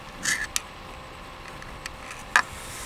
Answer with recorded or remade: recorded